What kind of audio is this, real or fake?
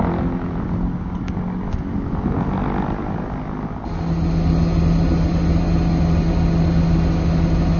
real